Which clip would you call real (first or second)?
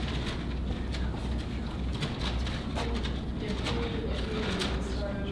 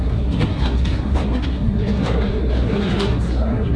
first